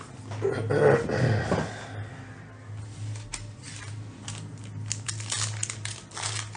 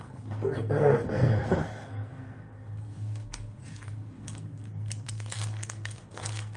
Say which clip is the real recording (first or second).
first